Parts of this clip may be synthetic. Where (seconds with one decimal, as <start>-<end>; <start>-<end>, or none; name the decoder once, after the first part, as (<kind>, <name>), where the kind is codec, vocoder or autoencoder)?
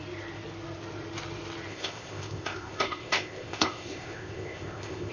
1.7-5.1 (codec, ZipCodec)